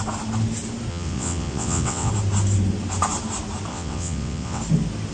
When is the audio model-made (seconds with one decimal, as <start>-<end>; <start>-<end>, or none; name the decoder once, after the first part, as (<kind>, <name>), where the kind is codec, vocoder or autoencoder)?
0.9-2.1 (vocoder, WaveNeXt); 3.7-4.6